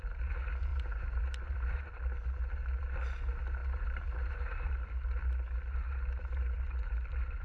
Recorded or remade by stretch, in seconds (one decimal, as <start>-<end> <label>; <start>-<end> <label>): 0.0-0.7 recorded; 0.7-1.9 remade; 1.9-3.6 recorded; 3.6-5.2 remade; 5.2-7.4 recorded